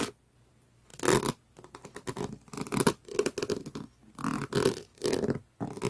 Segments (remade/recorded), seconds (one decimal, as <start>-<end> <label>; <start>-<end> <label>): 0.0-5.9 recorded